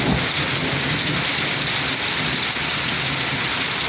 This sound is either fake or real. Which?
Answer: real